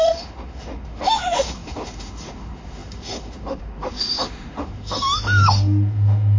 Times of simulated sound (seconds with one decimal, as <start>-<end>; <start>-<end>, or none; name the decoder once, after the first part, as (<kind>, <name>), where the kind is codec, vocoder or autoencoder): 0.0-6.4 (autoencoder, DAC-VAE)